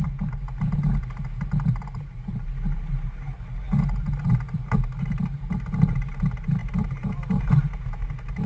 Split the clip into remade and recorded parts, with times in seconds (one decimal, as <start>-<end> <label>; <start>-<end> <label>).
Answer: 0.0-8.5 recorded